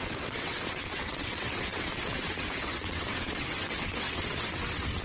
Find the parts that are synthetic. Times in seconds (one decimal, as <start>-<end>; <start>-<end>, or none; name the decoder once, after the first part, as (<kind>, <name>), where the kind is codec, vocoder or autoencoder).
0.0-5.0 (vocoder, WaveNeXt)